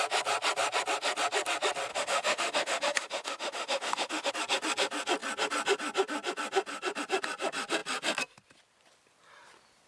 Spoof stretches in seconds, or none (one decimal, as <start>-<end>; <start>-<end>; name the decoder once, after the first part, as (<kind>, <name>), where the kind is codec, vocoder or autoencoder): 1.9-4.3 (autoencoder, DAC-VAE)

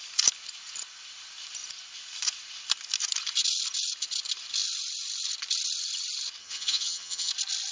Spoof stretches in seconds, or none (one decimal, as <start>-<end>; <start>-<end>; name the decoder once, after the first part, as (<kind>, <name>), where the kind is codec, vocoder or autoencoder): 6.4-7.3 (vocoder, HiFi-GAN)

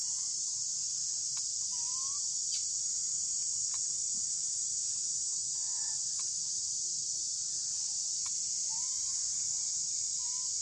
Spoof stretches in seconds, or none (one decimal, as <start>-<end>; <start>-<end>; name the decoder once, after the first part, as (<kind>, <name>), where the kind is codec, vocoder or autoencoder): 5.2-5.9 (autoencoder, DAC-VAE)

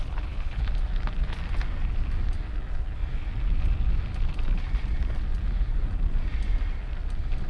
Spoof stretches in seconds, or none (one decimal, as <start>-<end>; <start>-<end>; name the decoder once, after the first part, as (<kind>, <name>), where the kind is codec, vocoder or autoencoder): 0.0-0.6 (codec, HILCodec)

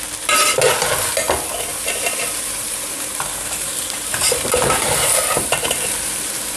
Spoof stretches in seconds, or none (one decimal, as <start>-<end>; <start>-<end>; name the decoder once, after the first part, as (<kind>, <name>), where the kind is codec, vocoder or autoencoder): 1.7-5.7 (vocoder, BigVGAN v2)

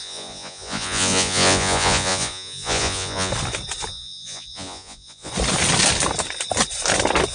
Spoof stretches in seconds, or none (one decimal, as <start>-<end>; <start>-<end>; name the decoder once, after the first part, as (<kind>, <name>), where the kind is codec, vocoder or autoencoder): 0.0-3.3 (vocoder, Vocos); 3.9-5.3

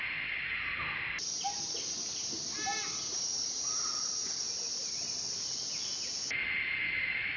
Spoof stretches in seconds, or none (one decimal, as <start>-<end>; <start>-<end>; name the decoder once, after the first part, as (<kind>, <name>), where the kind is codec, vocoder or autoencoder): none